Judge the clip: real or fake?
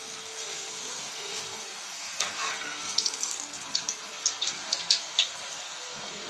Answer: fake